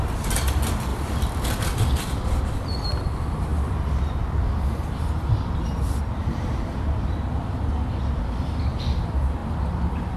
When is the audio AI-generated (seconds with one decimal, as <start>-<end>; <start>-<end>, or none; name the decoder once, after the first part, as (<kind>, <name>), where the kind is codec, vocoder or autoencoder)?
0.9-2.4 (vocoder, BigVGAN v2); 3.5-8.5; 9.4-10.2